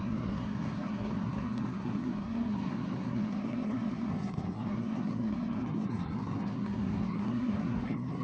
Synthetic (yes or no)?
yes